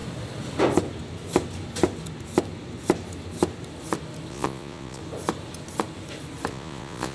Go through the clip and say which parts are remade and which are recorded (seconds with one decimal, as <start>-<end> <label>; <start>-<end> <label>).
0.0-4.3 recorded; 4.3-5.0 remade; 5.0-6.5 recorded; 6.5-7.1 remade